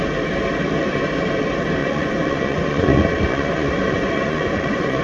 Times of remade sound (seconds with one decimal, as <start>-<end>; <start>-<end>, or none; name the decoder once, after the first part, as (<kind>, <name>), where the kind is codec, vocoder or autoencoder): 1.8-5.0 (vocoder, Vocos)